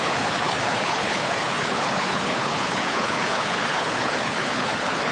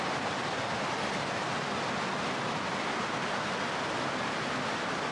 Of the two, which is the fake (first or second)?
first